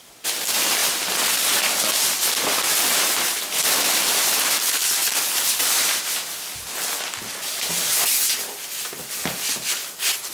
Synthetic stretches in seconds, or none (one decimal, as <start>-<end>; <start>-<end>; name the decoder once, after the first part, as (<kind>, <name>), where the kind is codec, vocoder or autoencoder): 0.8-4.1 (vocoder, BigVGAN v2); 5.0-6.0